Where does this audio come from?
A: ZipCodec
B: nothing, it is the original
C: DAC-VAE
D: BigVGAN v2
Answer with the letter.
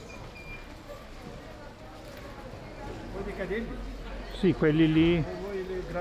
B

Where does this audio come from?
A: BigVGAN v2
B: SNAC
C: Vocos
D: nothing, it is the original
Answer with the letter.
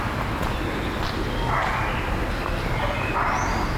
D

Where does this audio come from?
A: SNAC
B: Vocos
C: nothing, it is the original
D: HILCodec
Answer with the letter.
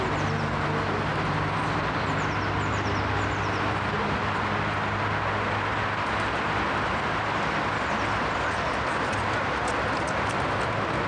C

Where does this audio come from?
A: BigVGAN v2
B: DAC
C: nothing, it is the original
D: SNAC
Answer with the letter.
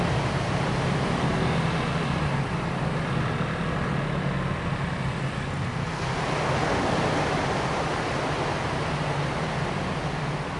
C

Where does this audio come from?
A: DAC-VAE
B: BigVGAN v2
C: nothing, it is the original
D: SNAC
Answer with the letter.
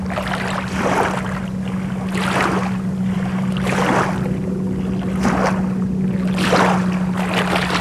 C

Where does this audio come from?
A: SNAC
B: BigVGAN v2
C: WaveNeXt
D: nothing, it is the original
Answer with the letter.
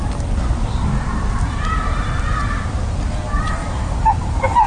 D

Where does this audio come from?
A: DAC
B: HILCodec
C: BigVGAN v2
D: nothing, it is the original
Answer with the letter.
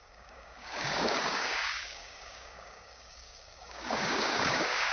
A